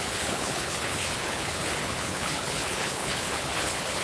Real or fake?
fake